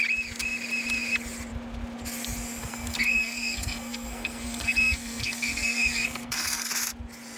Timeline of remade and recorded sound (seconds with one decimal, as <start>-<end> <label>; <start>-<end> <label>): 0.0-2.6 recorded; 2.6-6.7 remade; 6.7-7.4 recorded